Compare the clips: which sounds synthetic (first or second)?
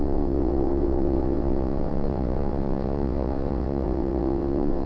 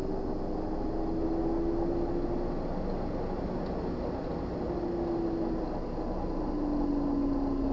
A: first